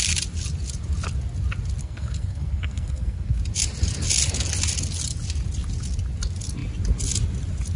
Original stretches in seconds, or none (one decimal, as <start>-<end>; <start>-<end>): 0.0-1.8; 3.4-7.8